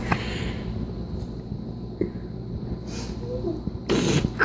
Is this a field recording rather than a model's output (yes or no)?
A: yes